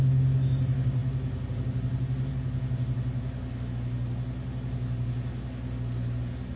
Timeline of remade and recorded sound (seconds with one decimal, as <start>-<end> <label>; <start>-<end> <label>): 0.0-6.6 recorded